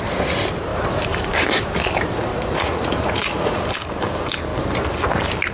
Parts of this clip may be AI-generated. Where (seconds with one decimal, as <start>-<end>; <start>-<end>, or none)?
2.3-3.6